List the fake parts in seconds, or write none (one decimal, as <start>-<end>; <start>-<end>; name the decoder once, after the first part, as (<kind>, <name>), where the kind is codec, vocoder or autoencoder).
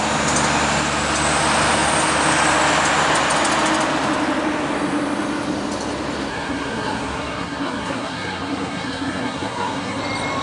6.3-10.0 (codec, SNAC)